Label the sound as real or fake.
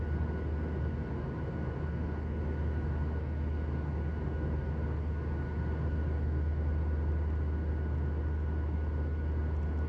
real